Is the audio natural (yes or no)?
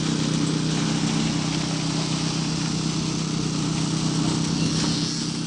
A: yes